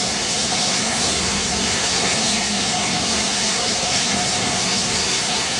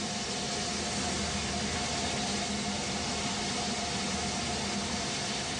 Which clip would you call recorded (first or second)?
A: second